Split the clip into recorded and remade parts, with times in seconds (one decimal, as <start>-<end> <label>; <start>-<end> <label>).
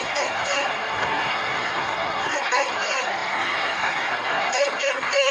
0.0-5.3 remade